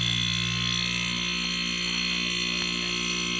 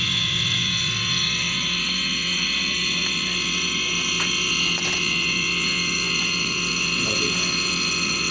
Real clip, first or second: first